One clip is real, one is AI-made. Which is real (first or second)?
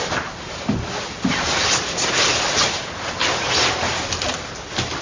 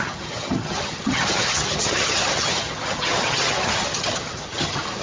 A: first